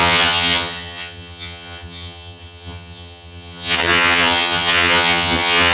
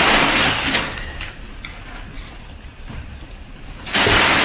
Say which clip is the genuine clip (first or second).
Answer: second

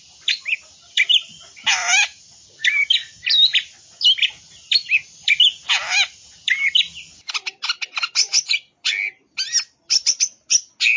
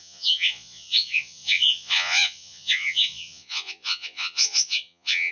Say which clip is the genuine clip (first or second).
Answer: first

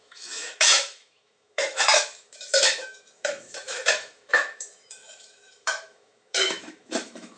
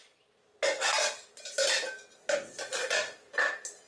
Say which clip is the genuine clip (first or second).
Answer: second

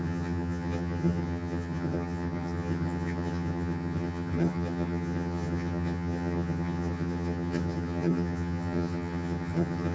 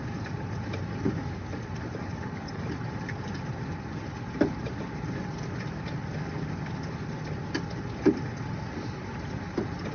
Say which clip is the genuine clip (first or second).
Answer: second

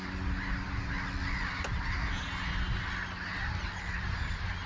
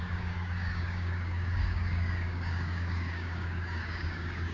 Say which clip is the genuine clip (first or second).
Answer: first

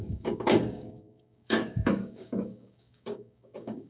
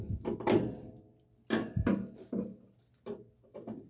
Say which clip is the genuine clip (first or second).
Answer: second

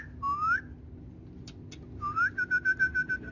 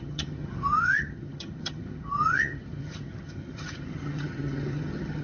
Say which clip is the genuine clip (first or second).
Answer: first